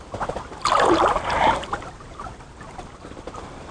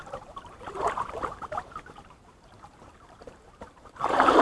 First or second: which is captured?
first